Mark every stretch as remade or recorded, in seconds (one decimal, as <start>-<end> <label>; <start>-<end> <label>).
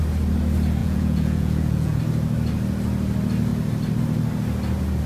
0.0-0.8 recorded; 0.8-2.0 remade; 2.0-5.1 recorded